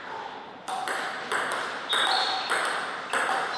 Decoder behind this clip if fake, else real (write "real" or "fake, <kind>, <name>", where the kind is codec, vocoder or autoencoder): real